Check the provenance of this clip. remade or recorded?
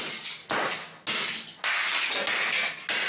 recorded